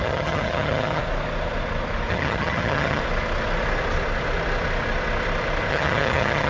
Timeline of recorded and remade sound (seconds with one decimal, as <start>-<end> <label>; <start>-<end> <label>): 0.0-1.0 remade; 1.0-2.1 recorded; 2.1-3.0 remade; 3.0-5.7 recorded; 5.7-6.5 remade